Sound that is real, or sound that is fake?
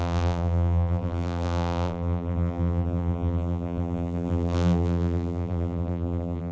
fake